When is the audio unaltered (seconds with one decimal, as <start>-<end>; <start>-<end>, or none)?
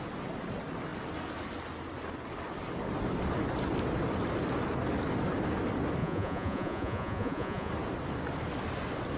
0.0-6.0; 7.7-9.2